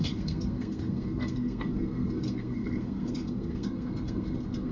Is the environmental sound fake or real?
fake